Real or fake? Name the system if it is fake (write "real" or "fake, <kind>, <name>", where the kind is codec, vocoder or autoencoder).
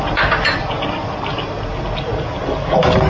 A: real